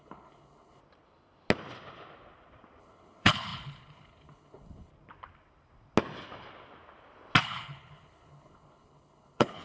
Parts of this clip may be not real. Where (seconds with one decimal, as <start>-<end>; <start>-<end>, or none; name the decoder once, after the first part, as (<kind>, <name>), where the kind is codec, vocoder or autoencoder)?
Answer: 0.0-0.8 (codec, HILCodec); 2.8-4.9; 7.4-9.6

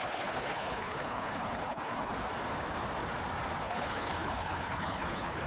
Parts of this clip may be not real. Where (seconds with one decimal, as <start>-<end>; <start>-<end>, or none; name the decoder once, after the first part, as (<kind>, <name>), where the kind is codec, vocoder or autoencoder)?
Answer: 0.0-2.1 (codec, HILCodec); 3.6-5.5